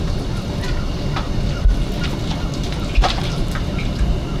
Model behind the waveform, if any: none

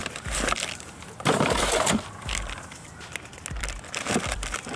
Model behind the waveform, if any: none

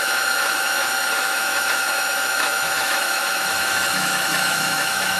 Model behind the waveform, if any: autoencoder, DAC-VAE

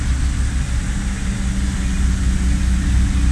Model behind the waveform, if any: none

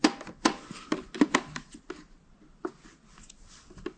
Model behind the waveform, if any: none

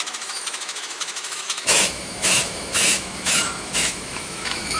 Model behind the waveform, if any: autoencoder, DAC-VAE